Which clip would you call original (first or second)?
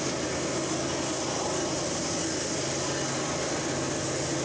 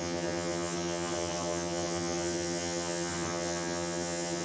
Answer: first